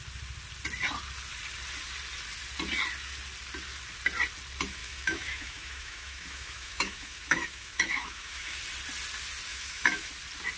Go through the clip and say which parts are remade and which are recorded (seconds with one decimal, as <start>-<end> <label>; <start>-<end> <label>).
0.0-4.8 recorded; 4.8-8.6 remade; 8.6-9.5 recorded; 9.5-10.1 remade; 10.1-10.6 recorded